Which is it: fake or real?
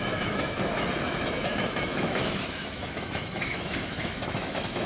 fake